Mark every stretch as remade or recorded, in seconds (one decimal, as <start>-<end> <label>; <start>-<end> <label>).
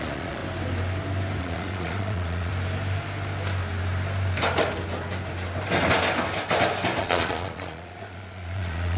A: 0.0-0.4 remade; 0.4-1.4 recorded; 1.4-2.5 remade; 2.5-7.0 recorded; 7.0-9.0 remade